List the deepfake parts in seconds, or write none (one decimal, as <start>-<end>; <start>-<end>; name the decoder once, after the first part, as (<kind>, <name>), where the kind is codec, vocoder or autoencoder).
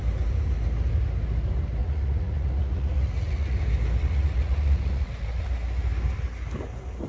1.8-3.6 (vocoder, Vocos); 4.0-5.5